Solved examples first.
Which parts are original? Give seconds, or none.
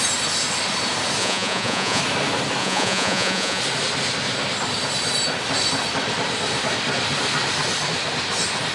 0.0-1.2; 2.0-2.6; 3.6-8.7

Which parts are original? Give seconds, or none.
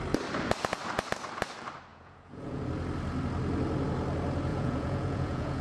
0.0-1.9; 2.6-4.5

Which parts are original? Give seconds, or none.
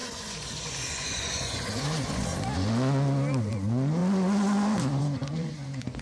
2.3-3.5; 4.0-5.0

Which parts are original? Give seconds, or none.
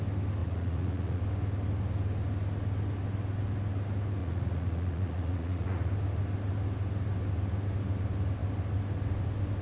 0.0-0.4; 1.2-4.2; 5.9-9.6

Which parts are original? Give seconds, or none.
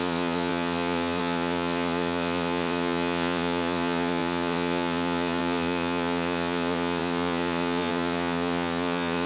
none